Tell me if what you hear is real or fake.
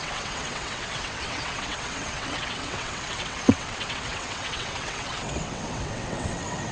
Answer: fake